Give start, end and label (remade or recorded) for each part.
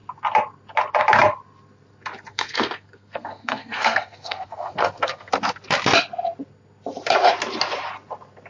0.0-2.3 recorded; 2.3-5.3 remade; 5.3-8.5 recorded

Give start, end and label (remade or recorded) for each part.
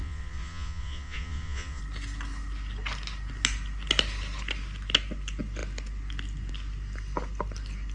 0.0-1.8 remade; 1.8-7.9 recorded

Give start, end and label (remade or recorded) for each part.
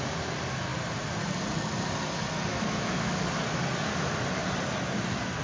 0.0-2.5 recorded; 2.5-3.1 remade; 3.1-5.4 recorded